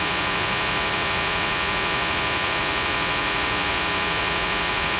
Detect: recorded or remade remade